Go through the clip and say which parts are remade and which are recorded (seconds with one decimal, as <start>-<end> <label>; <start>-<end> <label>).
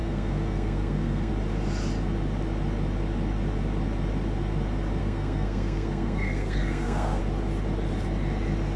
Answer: 0.0-1.3 remade; 1.3-5.0 recorded; 5.0-7.2 remade; 7.2-8.8 recorded